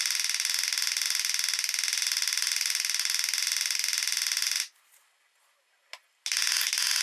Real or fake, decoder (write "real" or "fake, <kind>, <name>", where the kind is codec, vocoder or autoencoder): real